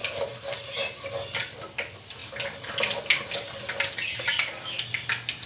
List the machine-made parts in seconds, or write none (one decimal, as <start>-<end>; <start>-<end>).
0.0-0.7